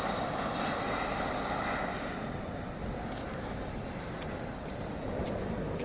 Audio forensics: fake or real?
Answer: real